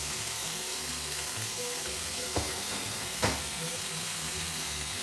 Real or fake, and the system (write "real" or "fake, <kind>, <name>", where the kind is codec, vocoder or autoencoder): fake, codec, SNAC